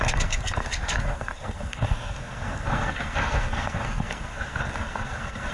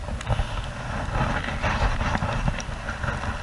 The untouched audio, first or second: second